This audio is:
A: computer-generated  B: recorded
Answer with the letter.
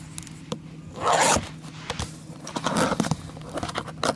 B